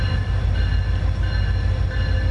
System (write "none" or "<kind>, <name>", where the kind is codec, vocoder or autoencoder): none